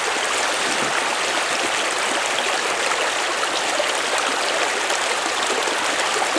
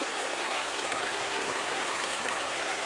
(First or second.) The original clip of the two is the first